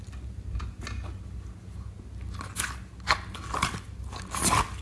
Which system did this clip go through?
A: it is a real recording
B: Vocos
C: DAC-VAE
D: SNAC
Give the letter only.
A